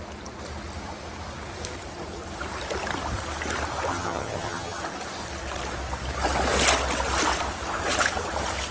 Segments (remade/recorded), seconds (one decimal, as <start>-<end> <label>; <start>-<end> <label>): 0.0-3.9 recorded; 3.9-4.8 remade; 4.8-8.7 recorded